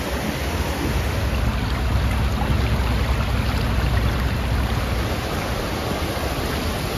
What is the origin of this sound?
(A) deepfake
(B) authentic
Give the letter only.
B